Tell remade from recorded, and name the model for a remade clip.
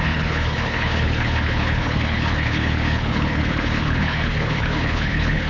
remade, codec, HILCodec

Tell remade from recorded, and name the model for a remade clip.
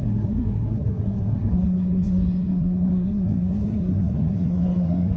remade, codec, SNAC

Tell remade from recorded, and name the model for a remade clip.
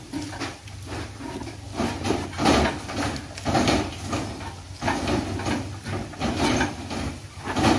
recorded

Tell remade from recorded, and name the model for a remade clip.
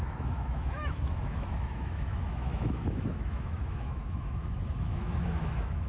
remade, autoencoder, DAC-VAE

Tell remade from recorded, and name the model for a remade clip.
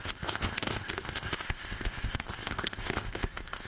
remade, codec, ZipCodec